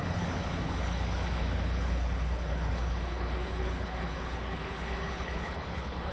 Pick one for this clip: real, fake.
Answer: fake